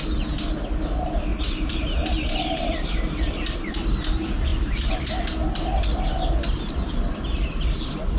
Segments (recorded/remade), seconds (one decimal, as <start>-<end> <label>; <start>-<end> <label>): 0.0-1.3 recorded; 1.3-3.7 remade; 3.7-8.2 recorded